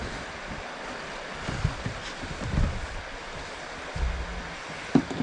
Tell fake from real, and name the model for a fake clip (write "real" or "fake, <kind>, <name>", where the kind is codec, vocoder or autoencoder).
real